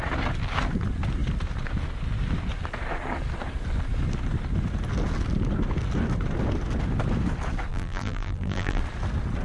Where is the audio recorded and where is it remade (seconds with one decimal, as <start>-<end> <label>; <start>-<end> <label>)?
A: 0.0-7.7 recorded; 7.7-8.8 remade; 8.8-9.4 recorded